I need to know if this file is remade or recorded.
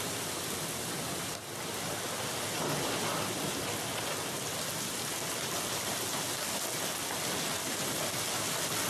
recorded